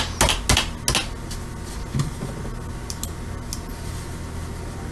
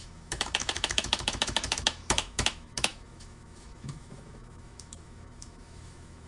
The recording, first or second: first